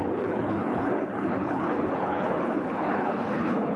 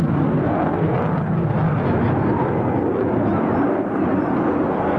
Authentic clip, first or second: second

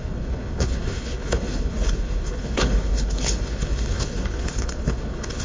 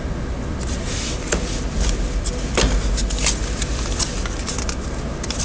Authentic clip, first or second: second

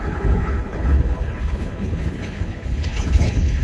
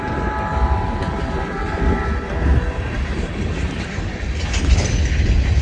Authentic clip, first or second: second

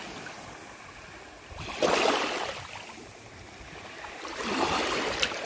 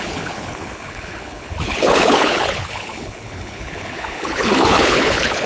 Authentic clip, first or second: first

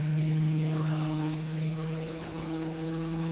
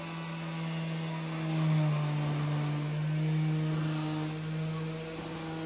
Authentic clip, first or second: second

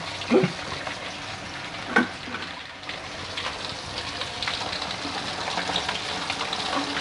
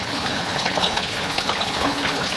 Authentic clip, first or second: first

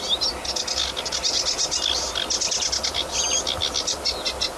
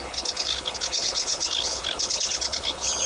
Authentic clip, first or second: first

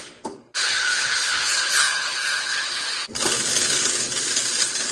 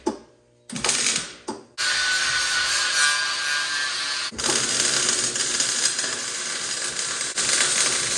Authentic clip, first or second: second